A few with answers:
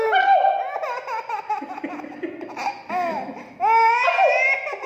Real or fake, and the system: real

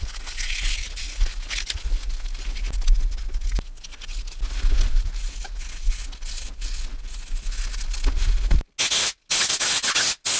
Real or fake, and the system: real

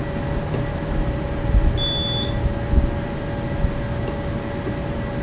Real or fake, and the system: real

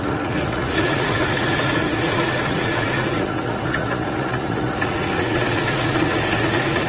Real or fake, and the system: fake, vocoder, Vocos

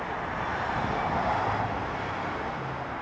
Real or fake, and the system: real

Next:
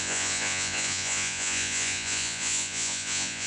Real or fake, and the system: fake, vocoder, Vocos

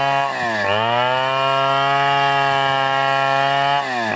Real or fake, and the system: real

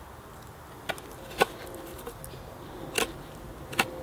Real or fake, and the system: real